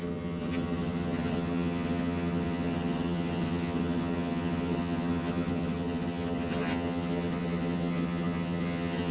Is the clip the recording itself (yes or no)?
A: no